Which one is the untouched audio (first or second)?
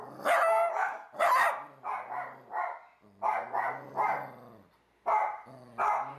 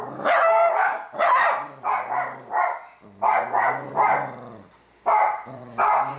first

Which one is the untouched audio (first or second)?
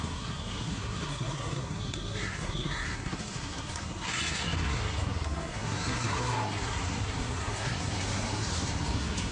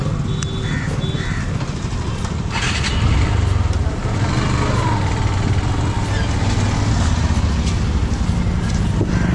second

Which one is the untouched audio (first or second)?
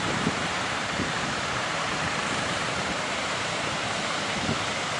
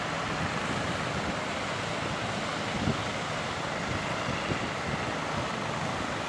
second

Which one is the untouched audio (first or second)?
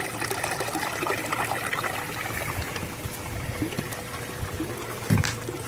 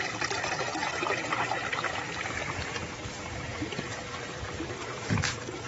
first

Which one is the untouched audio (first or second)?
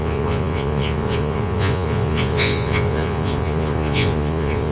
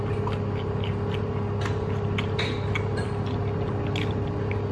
second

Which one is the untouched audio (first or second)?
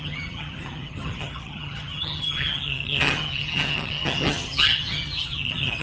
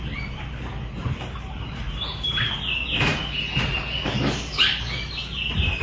second